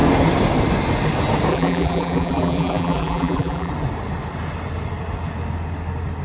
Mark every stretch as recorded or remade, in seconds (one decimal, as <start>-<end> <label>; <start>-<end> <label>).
0.0-1.5 recorded; 1.5-3.7 remade; 3.7-6.2 recorded